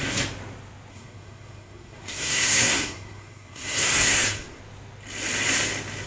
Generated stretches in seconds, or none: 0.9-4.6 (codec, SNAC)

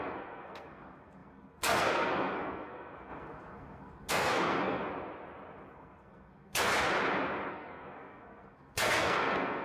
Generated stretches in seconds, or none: 0.0-4.8 (codec, SNAC); 5.7-6.7; 7.5-9.6

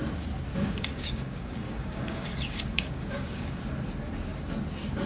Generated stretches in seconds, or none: 0.5-3.6 (codec, DAC)

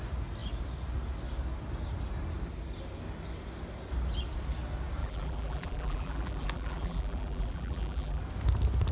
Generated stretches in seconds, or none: 5.0-8.2 (vocoder, BigVGAN v2)

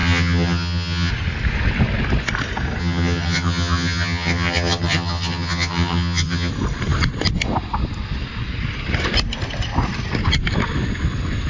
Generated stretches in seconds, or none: 0.0-1.1 (vocoder, HiFi-GAN); 2.8-6.5

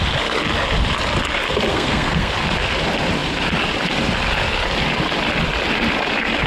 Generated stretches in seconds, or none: 1.7-2.3 (codec, SNAC)

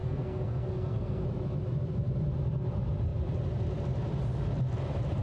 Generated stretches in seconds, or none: 0.0-1.2 (codec, SNAC)

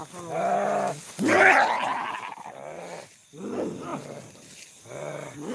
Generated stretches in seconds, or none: none